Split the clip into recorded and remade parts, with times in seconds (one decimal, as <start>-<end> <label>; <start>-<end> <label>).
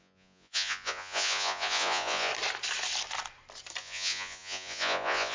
0.0-2.3 remade; 2.3-3.8 recorded; 3.8-5.3 remade